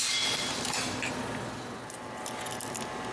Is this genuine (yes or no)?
yes